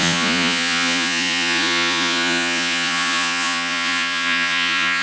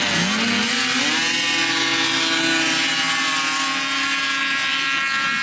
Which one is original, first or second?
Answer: second